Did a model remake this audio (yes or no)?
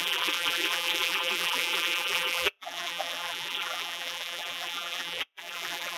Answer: yes